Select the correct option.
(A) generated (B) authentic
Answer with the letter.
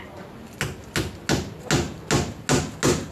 B